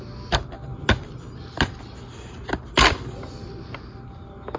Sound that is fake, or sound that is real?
real